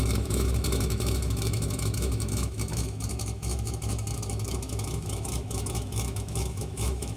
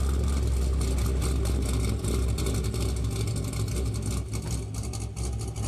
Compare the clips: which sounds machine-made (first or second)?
first